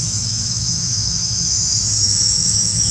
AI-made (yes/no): yes